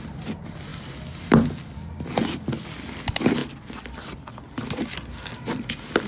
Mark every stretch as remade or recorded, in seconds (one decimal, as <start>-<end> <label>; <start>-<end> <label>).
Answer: 0.0-6.1 recorded